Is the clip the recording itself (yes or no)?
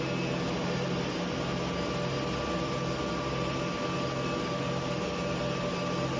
yes